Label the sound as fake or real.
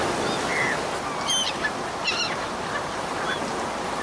real